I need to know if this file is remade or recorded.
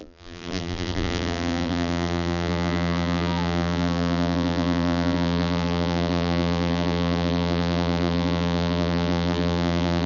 remade